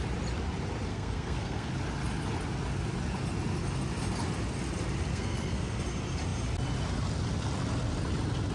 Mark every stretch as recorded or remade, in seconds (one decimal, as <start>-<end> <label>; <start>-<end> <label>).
0.0-0.9 recorded; 0.9-1.7 remade; 1.7-5.1 recorded; 5.1-5.8 remade; 5.8-8.5 recorded